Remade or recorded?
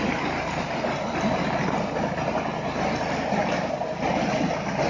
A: recorded